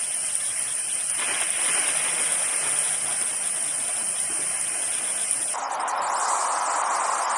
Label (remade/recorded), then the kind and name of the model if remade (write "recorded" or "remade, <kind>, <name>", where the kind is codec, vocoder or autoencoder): recorded